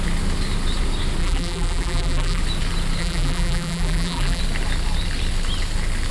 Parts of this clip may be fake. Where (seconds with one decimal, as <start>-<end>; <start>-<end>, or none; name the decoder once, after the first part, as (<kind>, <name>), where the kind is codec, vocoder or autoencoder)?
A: 1.2-2.4 (vocoder, BigVGAN v2); 3.0-4.4